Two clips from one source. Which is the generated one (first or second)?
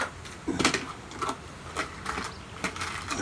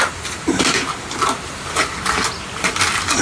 second